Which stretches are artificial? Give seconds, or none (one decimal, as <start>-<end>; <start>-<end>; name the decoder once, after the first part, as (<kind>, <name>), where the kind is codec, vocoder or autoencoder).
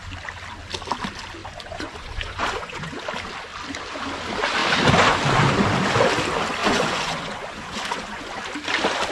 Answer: 1.4-3.0 (vocoder, Vocos); 6.6-8.3